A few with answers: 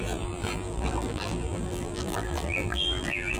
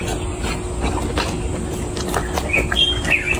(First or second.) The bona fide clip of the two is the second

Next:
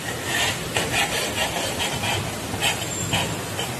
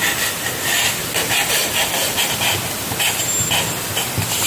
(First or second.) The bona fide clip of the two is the second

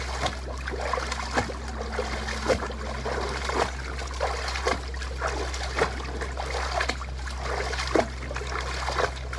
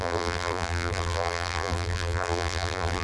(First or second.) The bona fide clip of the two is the first